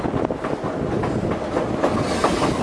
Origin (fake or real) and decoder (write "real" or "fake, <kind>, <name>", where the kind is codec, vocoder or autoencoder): real